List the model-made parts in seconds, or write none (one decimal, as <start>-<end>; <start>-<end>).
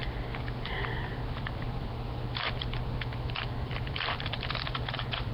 0.7-5.3